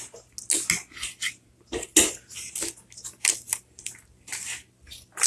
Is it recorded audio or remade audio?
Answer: recorded